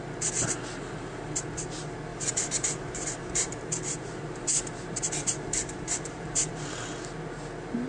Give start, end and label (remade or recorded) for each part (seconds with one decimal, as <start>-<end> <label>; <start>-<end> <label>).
0.0-2.1 recorded; 2.1-6.5 remade; 6.5-7.9 recorded